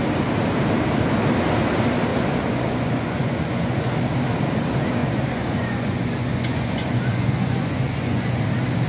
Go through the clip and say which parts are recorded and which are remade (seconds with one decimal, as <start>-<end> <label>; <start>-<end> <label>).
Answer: 0.0-2.1 recorded; 2.1-3.9 remade; 3.9-5.0 recorded; 5.0-8.4 remade; 8.4-8.9 recorded